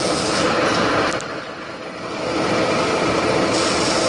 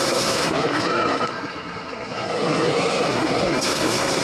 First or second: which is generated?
second